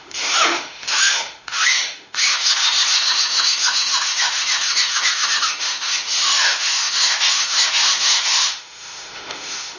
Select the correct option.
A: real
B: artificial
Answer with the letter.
B